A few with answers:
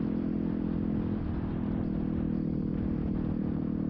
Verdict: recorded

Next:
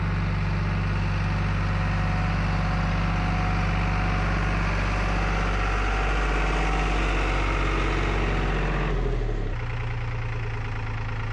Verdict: recorded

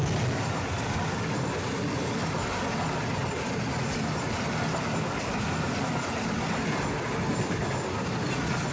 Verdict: recorded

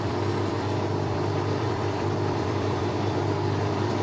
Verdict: remade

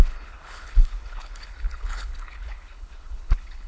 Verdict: remade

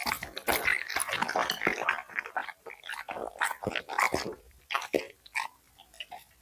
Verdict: recorded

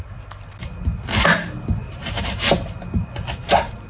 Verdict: recorded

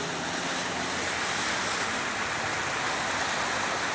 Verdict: recorded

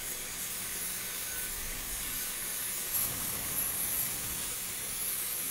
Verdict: remade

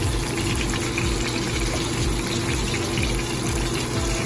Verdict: recorded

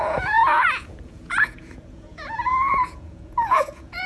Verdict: remade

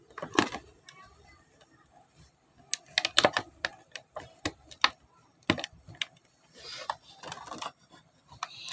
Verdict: recorded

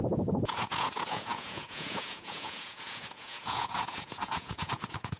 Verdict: remade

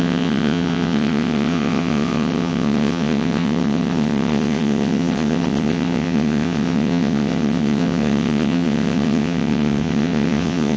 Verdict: remade